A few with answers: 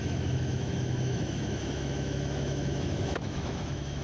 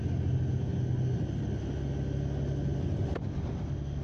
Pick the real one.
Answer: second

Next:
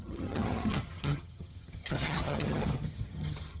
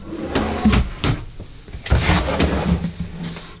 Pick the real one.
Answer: second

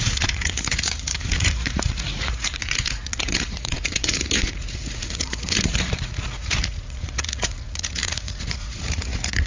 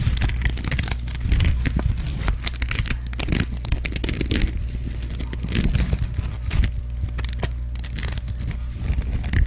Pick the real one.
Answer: second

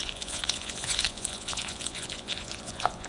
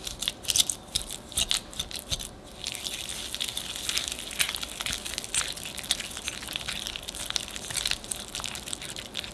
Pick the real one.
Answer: second